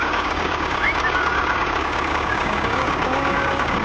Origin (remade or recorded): remade